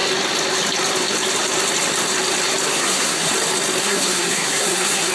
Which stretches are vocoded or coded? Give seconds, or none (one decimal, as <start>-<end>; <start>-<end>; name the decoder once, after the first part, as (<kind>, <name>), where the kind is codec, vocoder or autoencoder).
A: 2.7-3.3 (codec, SNAC); 3.8-5.1